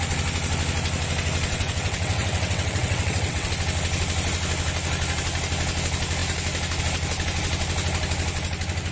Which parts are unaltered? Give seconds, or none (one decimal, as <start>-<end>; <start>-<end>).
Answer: 0.0-1.5; 3.5-8.9